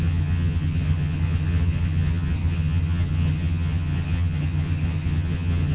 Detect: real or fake fake